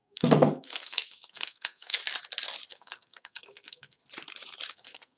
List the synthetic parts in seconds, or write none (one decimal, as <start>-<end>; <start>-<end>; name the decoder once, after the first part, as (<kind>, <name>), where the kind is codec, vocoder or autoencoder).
0.0-2.0 (codec, SNAC); 2.7-4.0; 4.7-5.2